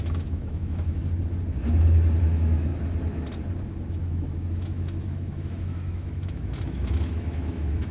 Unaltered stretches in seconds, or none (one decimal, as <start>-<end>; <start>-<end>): 1.0-2.2; 2.7-3.9